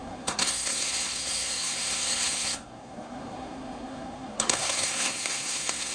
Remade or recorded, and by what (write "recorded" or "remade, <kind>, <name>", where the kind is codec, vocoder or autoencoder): remade, codec, SNAC